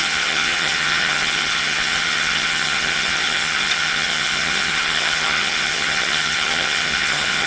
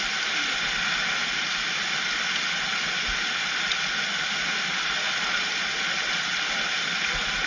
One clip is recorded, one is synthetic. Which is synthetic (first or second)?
first